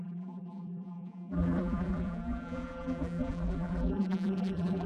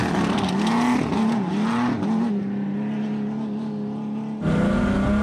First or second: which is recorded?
second